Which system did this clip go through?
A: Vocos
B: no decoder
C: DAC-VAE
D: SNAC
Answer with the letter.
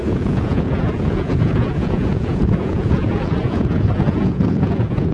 A